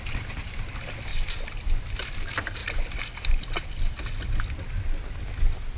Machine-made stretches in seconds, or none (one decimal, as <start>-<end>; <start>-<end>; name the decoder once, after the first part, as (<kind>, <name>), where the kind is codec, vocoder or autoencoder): none